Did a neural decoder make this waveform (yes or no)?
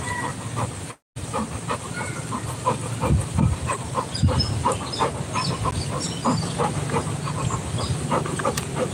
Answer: no